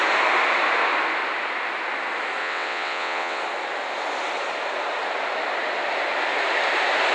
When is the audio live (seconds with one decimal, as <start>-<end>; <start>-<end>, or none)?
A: 0.0-2.4; 3.4-7.1